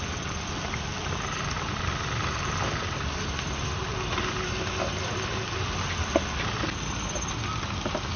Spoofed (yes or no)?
no